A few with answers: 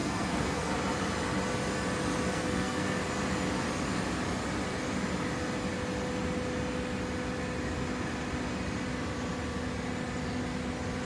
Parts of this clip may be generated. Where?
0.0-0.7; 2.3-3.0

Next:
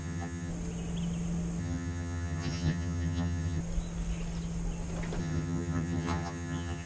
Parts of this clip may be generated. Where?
0.0-0.5; 1.6-3.6; 5.2-6.9